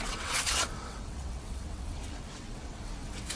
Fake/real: fake